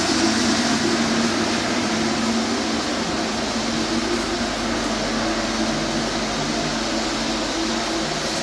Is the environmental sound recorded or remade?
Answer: recorded